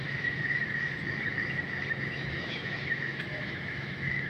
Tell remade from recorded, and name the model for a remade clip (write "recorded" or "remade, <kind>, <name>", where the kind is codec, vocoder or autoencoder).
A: remade, autoencoder, DAC-VAE